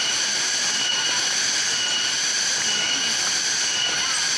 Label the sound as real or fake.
real